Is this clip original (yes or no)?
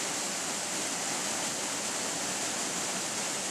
yes